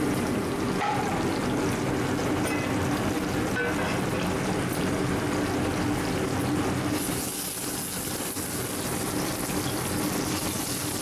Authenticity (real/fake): real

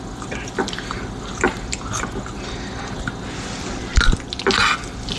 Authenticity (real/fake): real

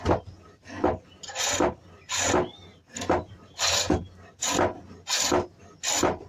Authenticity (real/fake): real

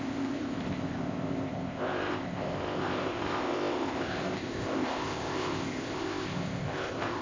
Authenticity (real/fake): fake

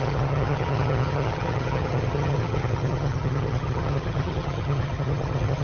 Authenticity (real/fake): fake